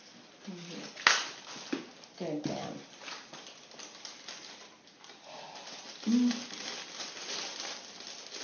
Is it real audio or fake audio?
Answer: real